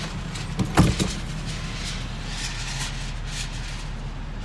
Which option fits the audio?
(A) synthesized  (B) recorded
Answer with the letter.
B